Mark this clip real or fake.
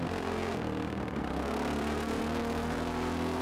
fake